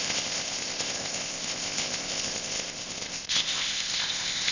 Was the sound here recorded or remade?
remade